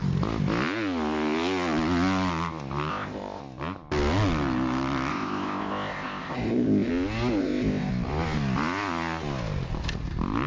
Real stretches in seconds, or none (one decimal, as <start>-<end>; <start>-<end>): 0.0-2.9; 3.4-5.1; 6.9-7.4; 7.9-10.5